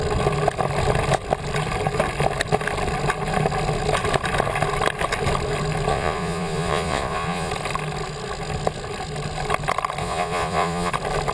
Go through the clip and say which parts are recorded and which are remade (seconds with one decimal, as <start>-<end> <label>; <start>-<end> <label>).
0.0-5.9 recorded; 5.9-7.5 remade; 7.5-10.0 recorded; 10.0-10.9 remade; 10.9-11.3 recorded